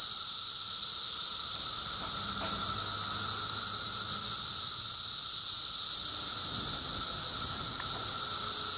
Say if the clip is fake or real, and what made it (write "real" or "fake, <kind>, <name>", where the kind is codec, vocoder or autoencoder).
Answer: real